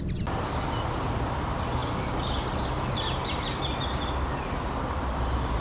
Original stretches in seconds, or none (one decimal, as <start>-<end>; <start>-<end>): 0.0-5.6